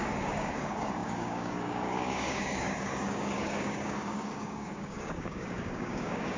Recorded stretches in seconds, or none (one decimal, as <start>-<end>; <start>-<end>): none